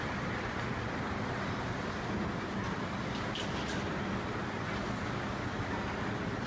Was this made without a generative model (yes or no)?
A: yes